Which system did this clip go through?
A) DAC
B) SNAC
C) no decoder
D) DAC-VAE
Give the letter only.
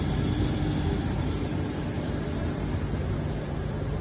C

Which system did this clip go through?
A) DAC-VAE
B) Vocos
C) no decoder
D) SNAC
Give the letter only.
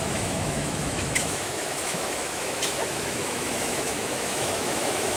A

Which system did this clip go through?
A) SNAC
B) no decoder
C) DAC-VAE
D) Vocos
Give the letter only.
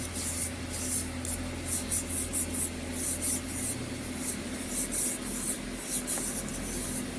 B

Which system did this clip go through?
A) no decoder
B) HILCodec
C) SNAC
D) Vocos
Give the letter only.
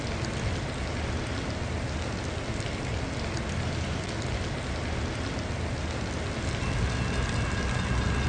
A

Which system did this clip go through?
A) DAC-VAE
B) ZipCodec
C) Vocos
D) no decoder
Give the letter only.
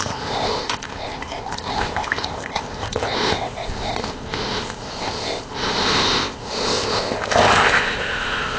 B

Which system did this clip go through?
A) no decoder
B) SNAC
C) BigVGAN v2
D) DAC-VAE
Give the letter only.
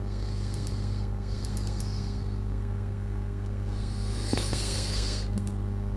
B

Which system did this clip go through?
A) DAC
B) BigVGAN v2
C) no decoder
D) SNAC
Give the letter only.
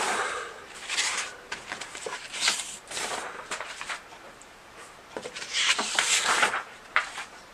B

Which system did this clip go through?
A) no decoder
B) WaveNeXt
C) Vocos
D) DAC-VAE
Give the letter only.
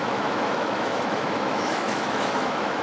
D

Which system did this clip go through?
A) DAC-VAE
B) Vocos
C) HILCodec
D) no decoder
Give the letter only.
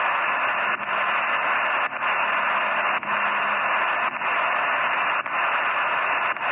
D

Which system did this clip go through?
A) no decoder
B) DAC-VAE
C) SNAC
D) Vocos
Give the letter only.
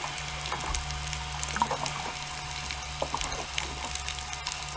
A